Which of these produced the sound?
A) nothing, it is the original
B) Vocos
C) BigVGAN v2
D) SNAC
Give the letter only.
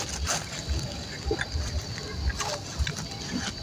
A